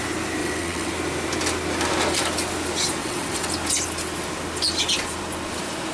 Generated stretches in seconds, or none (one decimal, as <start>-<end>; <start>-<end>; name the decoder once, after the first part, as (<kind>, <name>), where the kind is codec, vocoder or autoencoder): 0.4-0.9 (vocoder, WaveNeXt); 3.0-3.5